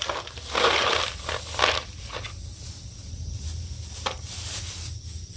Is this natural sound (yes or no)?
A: yes